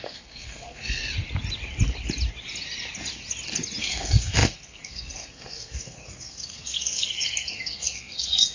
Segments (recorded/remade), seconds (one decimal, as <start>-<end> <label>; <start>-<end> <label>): 0.0-1.0 remade; 1.0-3.8 recorded; 3.8-8.5 remade